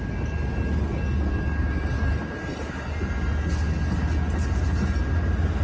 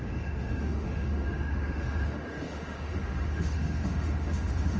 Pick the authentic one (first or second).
first